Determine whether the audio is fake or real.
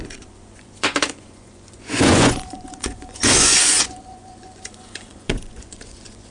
fake